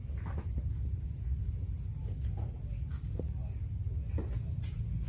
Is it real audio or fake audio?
real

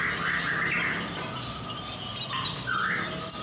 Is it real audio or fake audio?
real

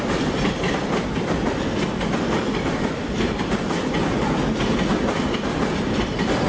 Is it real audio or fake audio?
real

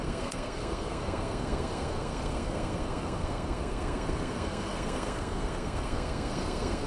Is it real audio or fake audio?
fake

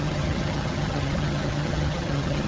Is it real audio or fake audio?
fake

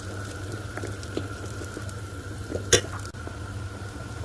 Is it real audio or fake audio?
real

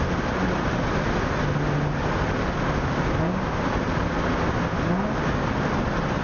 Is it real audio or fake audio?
real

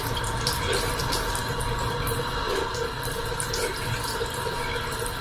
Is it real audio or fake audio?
real